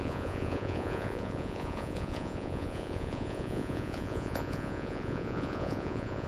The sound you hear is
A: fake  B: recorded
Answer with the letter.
A